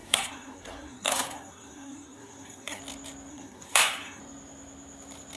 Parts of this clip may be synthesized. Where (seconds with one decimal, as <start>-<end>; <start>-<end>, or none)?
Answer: 0.0-2.8; 3.3-4.2